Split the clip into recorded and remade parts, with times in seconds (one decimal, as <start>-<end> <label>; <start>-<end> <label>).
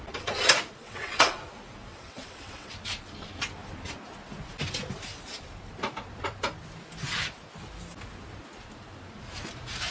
0.0-0.8 recorded; 0.8-1.4 remade; 1.4-1.9 recorded; 1.9-2.7 remade; 2.7-9.9 recorded